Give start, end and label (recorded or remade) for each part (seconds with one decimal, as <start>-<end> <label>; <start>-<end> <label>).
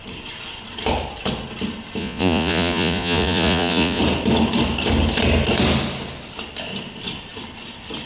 0.0-2.0 recorded; 2.0-4.0 remade; 4.0-8.1 recorded